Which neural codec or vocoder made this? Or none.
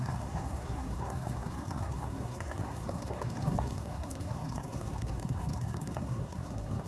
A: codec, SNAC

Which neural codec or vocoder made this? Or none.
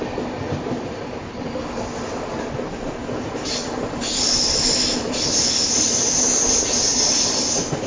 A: none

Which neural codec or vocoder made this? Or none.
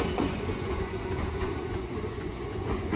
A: vocoder, Vocos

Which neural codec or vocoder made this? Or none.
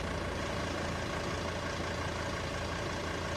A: none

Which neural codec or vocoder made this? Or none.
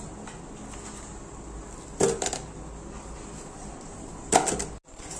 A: none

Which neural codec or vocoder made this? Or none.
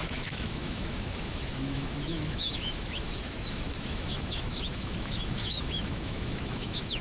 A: autoencoder, DAC-VAE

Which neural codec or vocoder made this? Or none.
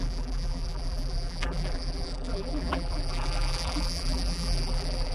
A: vocoder, BigVGAN v2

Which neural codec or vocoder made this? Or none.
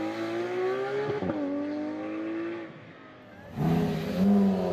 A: none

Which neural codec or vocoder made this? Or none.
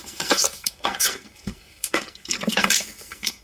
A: codec, SNAC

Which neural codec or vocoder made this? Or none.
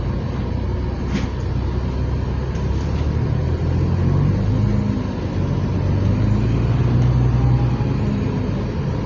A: none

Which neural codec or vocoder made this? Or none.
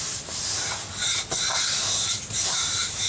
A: none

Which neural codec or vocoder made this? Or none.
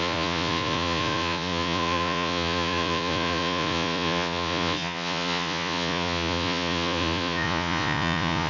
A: vocoder, Vocos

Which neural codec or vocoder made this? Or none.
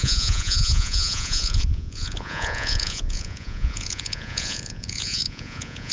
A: vocoder, Vocos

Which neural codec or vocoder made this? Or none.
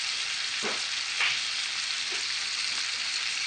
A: none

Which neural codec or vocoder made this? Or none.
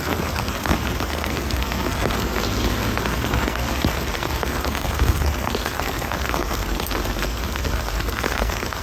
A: codec, SNAC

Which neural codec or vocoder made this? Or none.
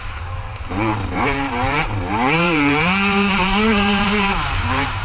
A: vocoder, BigVGAN v2